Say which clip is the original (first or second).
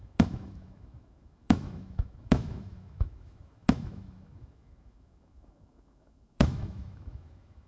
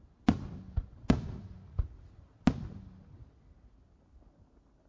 second